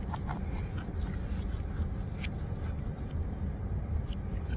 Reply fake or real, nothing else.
real